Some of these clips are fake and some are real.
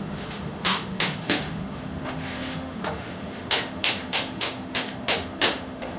fake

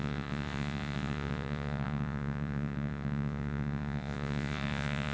fake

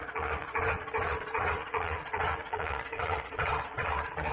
fake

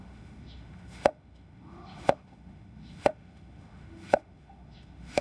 fake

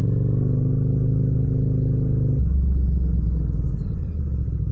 real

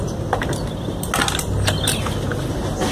real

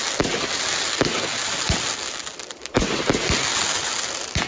real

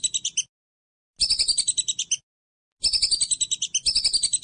real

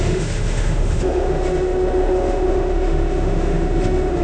fake